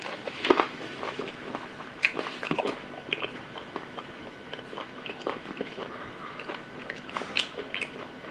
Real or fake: fake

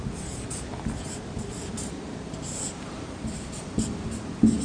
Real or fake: real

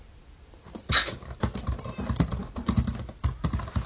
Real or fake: fake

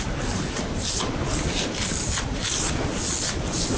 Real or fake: real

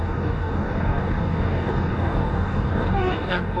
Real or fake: fake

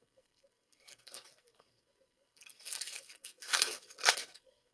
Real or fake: fake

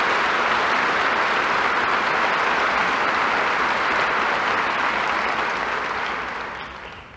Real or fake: real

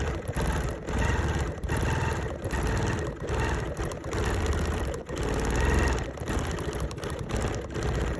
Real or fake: fake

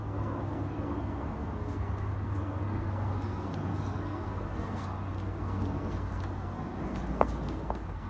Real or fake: fake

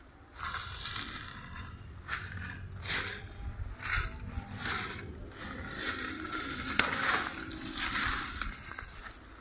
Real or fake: real